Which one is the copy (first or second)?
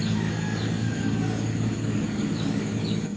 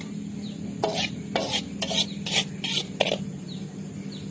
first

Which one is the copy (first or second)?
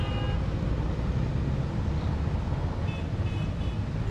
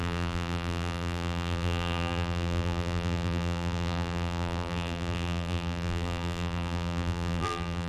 second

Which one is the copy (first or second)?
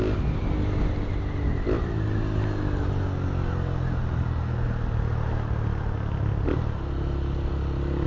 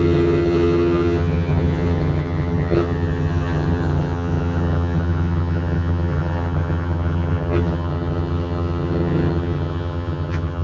second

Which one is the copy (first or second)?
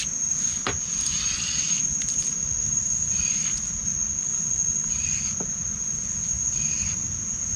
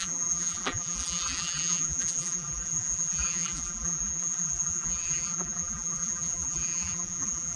second